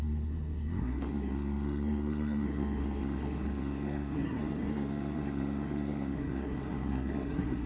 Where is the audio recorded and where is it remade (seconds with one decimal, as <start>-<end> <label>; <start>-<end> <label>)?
0.0-7.7 remade